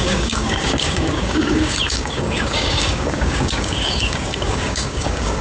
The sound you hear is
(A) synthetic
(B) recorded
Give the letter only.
A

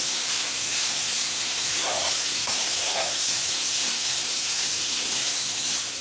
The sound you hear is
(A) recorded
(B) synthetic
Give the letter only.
B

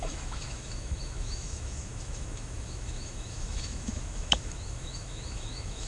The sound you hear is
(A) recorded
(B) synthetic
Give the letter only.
B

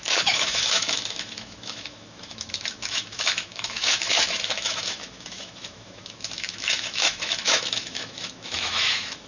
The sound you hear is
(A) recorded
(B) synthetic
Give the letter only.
B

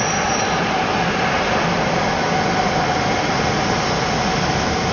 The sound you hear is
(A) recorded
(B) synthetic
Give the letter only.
A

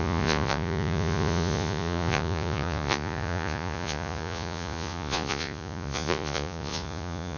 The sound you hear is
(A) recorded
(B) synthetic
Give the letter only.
B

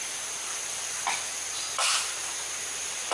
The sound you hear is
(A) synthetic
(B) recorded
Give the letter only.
A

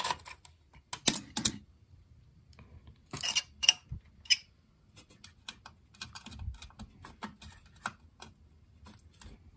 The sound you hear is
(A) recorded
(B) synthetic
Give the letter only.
A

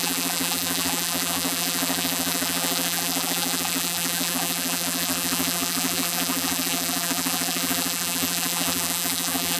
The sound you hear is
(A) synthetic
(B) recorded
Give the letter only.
A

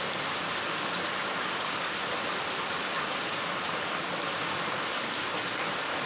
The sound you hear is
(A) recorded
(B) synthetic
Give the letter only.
A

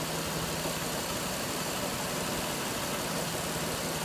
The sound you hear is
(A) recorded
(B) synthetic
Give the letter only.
A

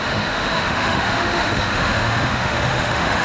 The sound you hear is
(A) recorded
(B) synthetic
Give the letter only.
B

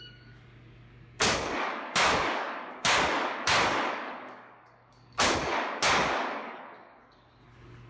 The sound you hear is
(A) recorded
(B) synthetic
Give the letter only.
B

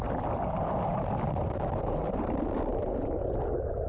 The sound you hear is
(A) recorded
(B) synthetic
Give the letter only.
A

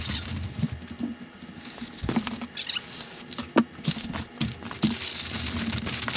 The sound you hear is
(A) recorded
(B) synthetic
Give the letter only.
A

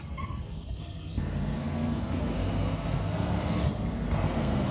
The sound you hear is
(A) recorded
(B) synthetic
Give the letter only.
B